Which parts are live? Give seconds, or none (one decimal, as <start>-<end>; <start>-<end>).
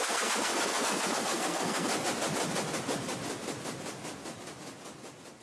1.9-5.4